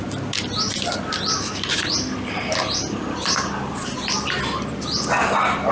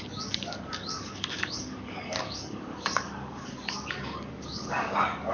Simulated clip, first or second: second